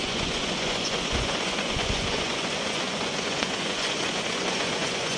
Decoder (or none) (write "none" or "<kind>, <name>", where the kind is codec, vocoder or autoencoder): vocoder, Vocos